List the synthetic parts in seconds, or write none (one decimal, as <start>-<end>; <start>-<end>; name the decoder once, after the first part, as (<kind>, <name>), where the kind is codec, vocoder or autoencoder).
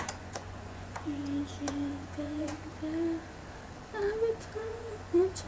0.0-2.7 (vocoder, Vocos); 4.4-5.5